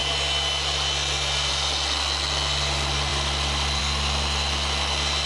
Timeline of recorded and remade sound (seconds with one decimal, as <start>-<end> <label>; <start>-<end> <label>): 0.0-5.3 recorded